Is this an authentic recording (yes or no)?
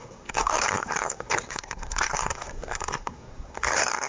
no